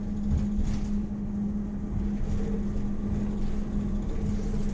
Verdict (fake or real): real